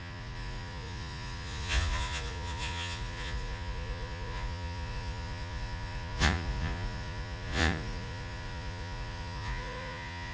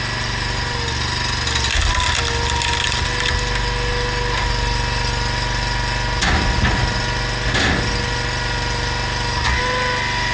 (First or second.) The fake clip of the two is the first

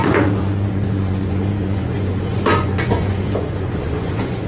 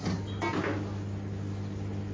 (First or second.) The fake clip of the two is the first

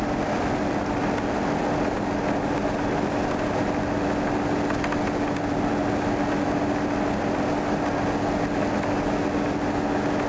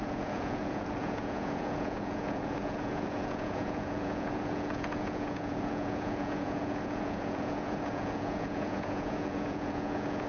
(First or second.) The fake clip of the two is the second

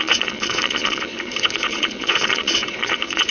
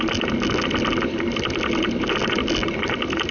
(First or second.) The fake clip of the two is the first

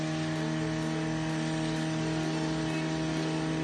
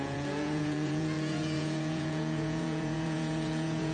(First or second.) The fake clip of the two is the second